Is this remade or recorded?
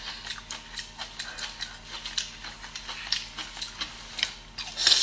recorded